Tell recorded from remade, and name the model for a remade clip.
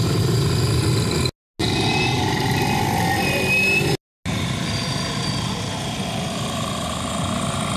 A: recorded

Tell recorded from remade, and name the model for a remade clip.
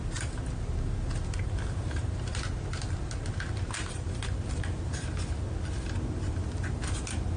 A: recorded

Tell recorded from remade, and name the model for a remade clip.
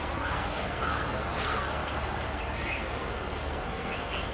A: remade, codec, SNAC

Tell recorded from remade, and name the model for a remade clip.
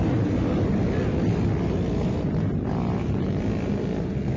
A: recorded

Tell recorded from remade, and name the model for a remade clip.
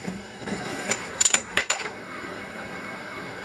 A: remade, codec, SNAC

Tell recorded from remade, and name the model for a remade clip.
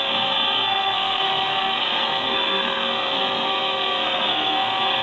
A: remade, codec, SNAC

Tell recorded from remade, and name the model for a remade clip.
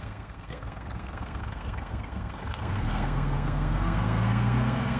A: remade, codec, SNAC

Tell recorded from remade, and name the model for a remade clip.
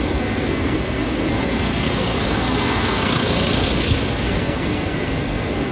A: remade, codec, SNAC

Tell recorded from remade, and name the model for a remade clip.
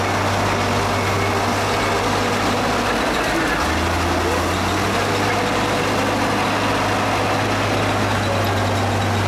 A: recorded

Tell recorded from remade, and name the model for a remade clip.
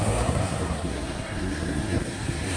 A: remade, codec, SNAC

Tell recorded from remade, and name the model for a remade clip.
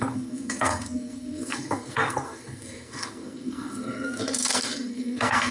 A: remade, codec, SNAC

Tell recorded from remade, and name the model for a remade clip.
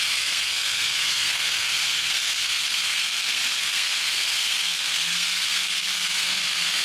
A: remade, codec, SNAC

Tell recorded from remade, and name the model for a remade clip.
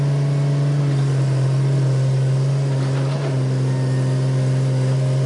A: recorded